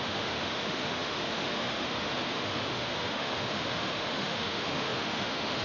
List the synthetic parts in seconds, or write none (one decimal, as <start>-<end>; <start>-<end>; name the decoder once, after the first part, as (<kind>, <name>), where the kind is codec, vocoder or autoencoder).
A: 0.0-5.6 (autoencoder, DAC-VAE)